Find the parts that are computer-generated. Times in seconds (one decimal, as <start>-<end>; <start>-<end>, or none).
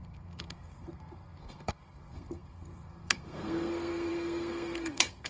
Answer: 0.0-5.3